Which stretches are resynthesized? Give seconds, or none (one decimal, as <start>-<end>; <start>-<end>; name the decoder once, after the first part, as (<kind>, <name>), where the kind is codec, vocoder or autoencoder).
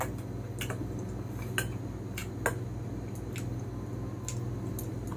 none